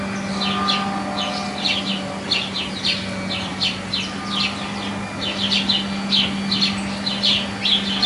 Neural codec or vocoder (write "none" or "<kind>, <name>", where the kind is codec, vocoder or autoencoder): none